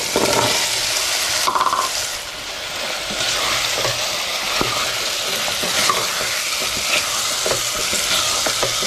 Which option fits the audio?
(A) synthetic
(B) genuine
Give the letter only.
B